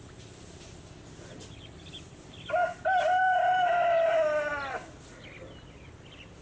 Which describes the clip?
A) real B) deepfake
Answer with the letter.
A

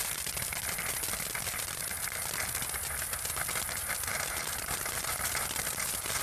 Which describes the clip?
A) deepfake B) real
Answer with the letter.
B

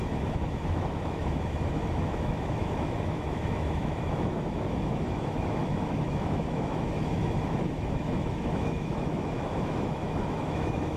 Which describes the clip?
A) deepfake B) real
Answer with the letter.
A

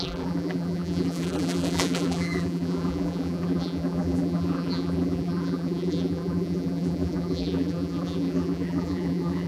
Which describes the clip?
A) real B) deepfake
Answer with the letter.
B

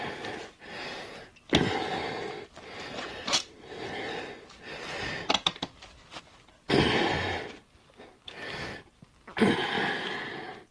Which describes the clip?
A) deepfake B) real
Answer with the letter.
B